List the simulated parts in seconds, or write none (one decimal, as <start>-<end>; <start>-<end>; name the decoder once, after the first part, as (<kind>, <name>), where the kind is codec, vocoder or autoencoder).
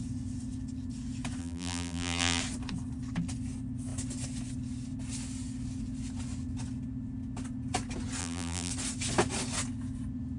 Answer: 1.4-2.4 (vocoder, BigVGAN v2); 8.2-8.7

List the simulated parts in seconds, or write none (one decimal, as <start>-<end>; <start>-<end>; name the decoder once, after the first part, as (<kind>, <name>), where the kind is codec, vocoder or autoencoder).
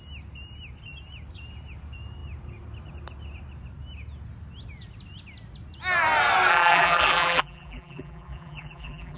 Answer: 6.5-9.2 (vocoder, BigVGAN v2)